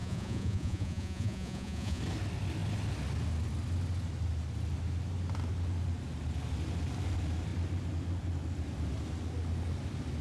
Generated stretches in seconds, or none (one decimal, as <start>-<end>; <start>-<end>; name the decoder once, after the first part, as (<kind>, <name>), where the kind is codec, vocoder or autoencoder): 0.0-2.0 (vocoder, Vocos)